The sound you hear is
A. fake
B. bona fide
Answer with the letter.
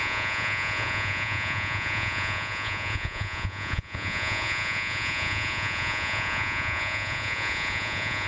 A